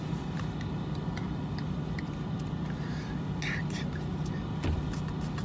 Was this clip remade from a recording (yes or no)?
no